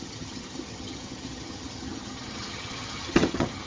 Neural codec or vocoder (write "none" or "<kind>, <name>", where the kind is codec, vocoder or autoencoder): vocoder, HiFi-GAN